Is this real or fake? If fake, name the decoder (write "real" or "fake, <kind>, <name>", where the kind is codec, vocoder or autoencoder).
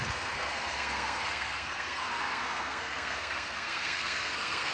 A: fake, codec, SNAC